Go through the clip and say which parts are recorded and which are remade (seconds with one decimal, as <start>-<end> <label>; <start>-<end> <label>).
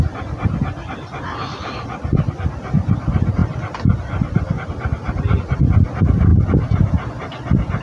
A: 0.0-7.8 recorded